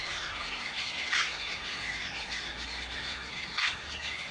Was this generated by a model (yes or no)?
yes